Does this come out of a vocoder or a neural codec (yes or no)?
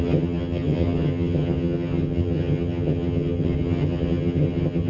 yes